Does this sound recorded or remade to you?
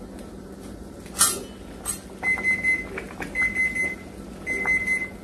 recorded